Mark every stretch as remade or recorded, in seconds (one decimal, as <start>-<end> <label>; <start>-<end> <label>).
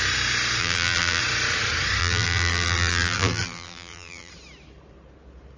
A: 0.0-0.6 recorded; 0.6-1.2 remade; 1.2-2.0 recorded; 2.0-4.3 remade; 4.3-5.6 recorded